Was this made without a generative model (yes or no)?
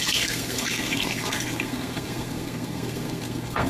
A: no